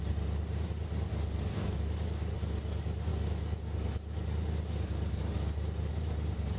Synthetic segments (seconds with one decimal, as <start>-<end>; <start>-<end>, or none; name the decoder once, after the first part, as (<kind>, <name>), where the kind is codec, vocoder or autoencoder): none